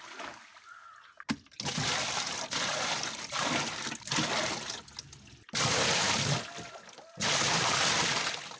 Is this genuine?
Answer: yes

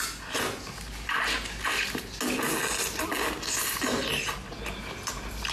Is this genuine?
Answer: yes